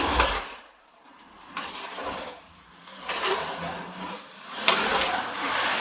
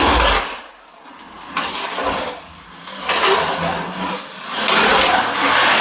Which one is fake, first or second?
first